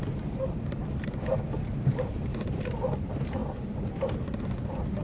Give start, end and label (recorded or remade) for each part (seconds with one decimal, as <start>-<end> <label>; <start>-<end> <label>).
0.0-3.4 remade; 3.4-4.4 recorded; 4.4-5.0 remade